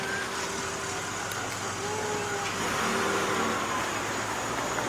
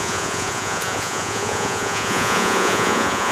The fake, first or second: second